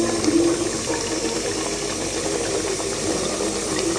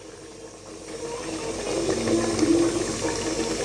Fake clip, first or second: first